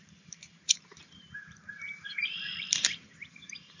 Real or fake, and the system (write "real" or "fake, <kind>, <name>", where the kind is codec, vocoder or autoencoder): fake, vocoder, BigVGAN v2